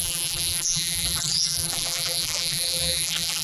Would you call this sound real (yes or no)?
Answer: no